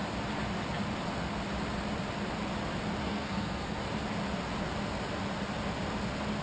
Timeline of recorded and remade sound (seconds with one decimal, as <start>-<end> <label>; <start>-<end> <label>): 0.0-3.0 recorded; 3.0-3.8 remade; 3.8-6.4 recorded

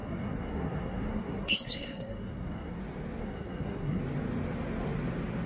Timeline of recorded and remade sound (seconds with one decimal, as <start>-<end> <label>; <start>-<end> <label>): 0.0-2.8 remade; 2.8-3.2 recorded; 3.2-4.0 remade; 4.0-5.5 recorded

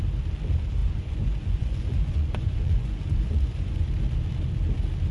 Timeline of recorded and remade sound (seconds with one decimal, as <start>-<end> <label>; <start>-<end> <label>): 0.0-0.8 recorded; 0.8-3.9 remade; 3.9-5.1 recorded

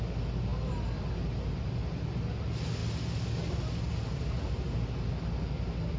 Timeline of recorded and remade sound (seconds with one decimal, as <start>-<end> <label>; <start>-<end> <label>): 0.0-6.0 recorded

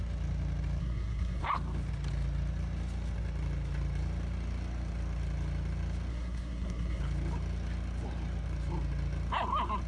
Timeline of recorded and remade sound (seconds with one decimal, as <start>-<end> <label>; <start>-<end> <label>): 0.0-0.8 recorded; 0.8-1.4 remade; 1.4-6.1 recorded; 6.1-7.0 remade; 7.0-9.9 recorded

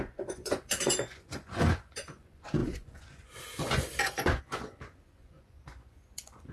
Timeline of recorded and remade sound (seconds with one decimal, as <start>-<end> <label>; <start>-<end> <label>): 0.0-6.5 remade